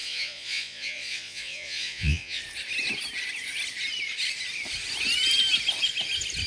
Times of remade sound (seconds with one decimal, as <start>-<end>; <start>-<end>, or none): 0.0-2.4